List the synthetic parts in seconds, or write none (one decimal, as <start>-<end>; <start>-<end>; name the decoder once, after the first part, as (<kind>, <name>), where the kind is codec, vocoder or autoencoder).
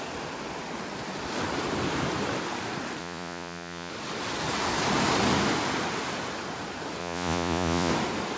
3.0-3.9 (vocoder, Vocos); 7.0-7.9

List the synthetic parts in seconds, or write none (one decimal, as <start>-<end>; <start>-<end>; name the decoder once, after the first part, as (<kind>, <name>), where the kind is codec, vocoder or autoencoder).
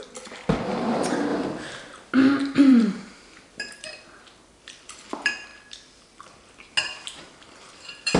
0.0-1.3 (vocoder, BigVGAN v2); 2.6-5.5; 7.2-8.2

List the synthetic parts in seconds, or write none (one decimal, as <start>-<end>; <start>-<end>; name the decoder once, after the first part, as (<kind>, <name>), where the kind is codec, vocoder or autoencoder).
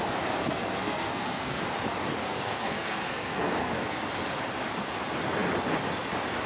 0.4-1.6 (codec, SNAC); 2.2-4.0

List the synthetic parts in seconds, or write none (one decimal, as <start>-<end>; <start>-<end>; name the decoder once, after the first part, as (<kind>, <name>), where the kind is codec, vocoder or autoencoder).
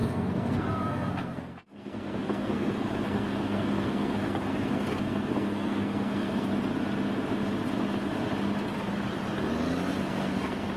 0.0-6.5 (codec, SNAC); 10.0-10.8